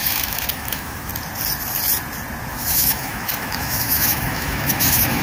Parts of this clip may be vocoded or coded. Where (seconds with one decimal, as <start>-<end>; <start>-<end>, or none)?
0.0-1.1; 2.5-5.2

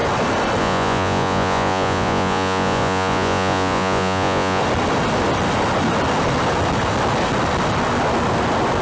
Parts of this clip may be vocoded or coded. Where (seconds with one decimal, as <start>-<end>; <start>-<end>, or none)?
0.6-4.6

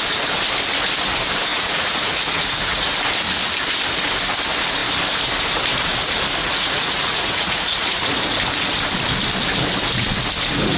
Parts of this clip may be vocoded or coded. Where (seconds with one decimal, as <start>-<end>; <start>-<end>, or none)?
1.5-2.9; 6.4-8.2

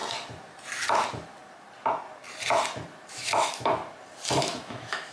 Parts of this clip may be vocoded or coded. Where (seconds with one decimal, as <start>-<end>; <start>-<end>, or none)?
3.1-3.8; 4.4-5.1

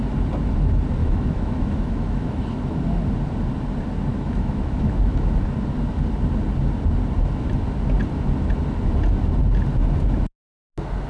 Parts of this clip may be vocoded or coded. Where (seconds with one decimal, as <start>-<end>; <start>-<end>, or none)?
1.0-2.8; 4.1-5.3